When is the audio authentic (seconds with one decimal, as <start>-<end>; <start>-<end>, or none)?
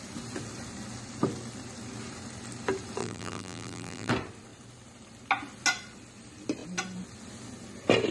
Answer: 0.0-3.0; 4.1-8.1